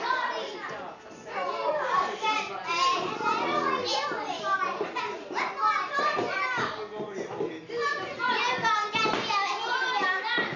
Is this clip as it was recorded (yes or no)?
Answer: yes